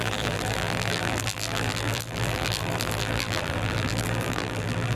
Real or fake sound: fake